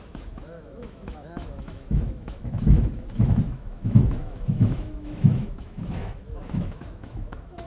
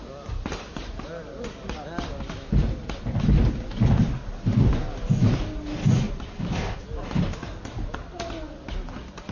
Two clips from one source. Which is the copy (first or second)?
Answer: first